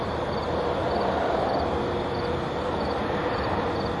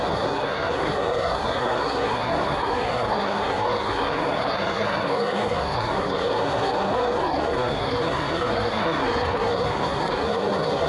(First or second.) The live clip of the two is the first